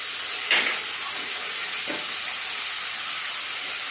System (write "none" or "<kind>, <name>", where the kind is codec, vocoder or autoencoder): none